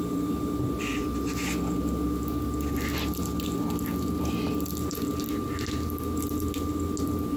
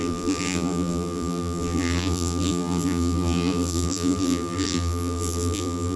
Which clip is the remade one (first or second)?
second